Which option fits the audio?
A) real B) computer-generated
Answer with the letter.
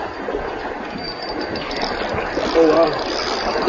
A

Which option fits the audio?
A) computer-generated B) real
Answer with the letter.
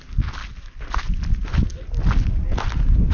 B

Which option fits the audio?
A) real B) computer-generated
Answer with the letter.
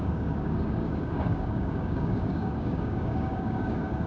B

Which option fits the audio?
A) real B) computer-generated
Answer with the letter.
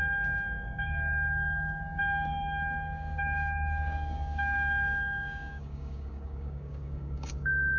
B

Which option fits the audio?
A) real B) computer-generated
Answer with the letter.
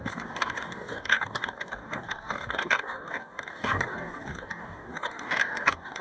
B